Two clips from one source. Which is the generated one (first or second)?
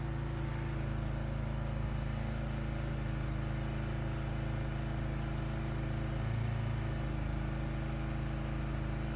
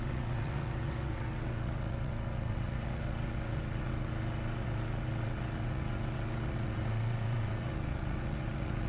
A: second